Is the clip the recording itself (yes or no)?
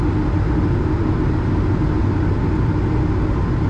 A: yes